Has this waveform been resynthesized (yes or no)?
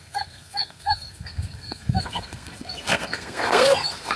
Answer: yes